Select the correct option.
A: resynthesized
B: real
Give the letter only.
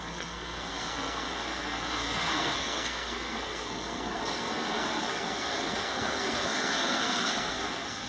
A